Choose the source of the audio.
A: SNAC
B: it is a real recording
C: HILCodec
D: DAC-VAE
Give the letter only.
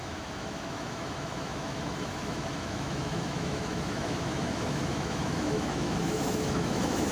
D